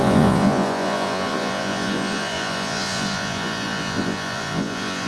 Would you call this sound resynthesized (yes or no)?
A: yes